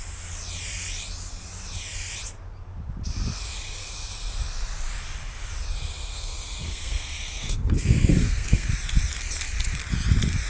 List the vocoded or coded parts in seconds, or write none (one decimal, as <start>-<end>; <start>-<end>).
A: 6.1-8.7